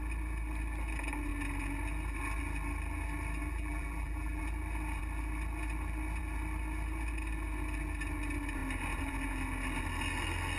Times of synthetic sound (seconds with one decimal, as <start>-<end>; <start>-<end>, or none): 3.5-4.4